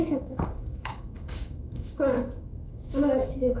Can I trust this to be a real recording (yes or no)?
no